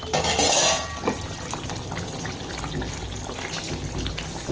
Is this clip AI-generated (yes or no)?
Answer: no